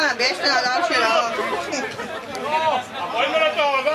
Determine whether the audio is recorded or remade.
recorded